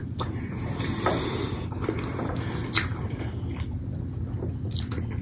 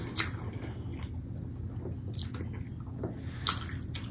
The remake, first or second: first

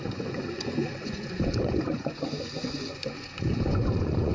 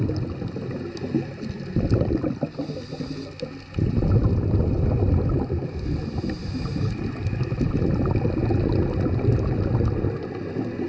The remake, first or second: first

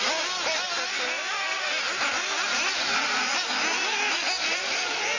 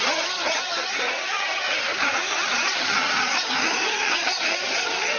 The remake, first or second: second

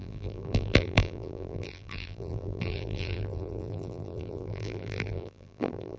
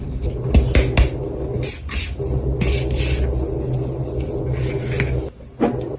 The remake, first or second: first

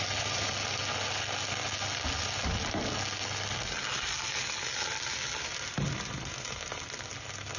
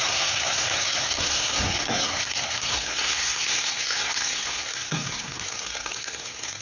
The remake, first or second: second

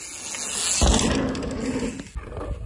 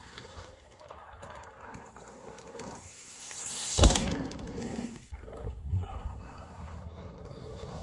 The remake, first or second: second